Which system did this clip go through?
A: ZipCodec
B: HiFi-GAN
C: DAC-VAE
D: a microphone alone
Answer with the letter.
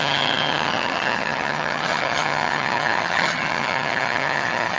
B